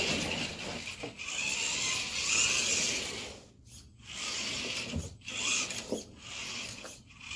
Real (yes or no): yes